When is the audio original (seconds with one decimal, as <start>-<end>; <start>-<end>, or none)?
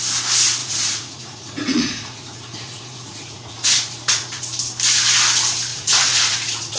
0.0-0.6; 4.4-5.7